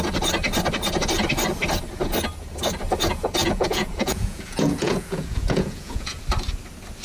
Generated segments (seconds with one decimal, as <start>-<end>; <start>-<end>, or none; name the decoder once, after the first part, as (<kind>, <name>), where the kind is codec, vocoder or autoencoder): 3.4-6.2 (vocoder, Vocos)

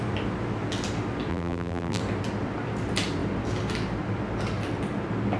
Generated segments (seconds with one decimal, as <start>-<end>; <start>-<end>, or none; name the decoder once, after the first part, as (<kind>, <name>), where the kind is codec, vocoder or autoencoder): 1.3-2.0 (vocoder, BigVGAN v2)

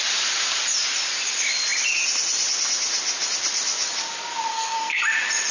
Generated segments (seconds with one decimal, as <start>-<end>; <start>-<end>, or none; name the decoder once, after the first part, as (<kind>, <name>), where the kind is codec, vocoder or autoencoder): 4.5-5.0 (codec, SNAC)

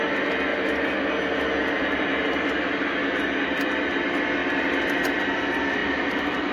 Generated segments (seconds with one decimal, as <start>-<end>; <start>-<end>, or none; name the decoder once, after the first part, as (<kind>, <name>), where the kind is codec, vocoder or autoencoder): 4.4-5.0 (vocoder, BigVGAN v2); 5.8-6.5

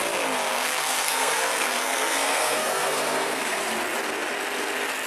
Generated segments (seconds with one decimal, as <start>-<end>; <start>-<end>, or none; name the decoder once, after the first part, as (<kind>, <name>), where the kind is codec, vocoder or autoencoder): 0.5-3.6 (codec, SNAC)

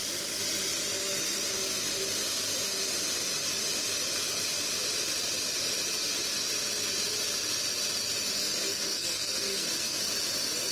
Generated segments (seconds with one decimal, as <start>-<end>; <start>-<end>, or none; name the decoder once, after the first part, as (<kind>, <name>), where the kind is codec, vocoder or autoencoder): 8.4-10.0 (codec, SNAC)

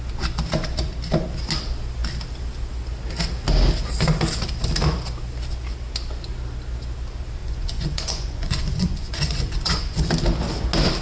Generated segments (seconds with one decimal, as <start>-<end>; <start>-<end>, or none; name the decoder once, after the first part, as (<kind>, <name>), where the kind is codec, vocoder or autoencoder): 7.4-10.1 (vocoder, Vocos)